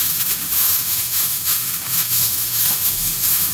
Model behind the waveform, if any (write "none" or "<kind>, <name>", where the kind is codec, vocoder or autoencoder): autoencoder, DAC-VAE